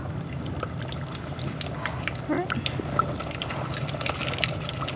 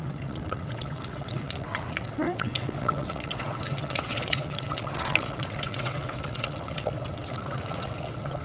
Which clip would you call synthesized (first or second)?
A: second